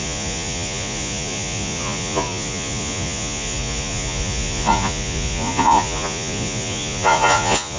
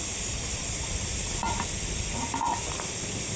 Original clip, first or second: second